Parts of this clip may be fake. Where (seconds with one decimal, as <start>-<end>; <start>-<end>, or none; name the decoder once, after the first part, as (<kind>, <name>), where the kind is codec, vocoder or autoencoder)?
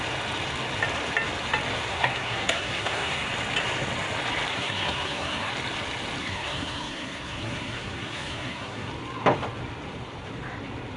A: 1.9-3.3 (codec, SNAC); 4.5-5.5; 6.2-8.9